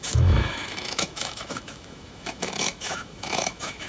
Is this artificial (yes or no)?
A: yes